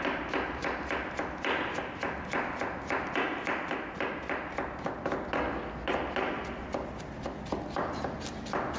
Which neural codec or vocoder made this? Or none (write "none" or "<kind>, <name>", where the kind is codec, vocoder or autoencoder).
none